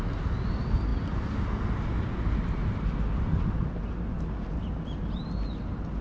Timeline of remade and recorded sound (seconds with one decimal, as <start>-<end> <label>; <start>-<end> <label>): 0.0-6.0 recorded